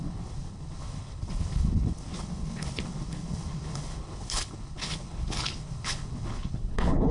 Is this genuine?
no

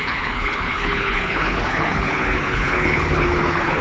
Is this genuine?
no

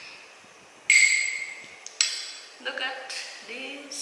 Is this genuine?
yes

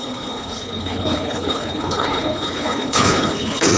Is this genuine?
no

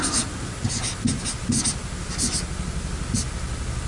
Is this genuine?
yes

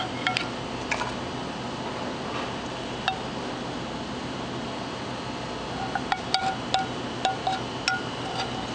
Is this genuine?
yes